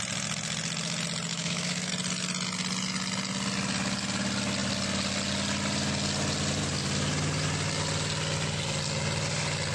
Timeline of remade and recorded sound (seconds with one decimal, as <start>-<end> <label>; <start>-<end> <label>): 0.0-1.3 recorded; 1.3-1.9 remade; 1.9-9.7 recorded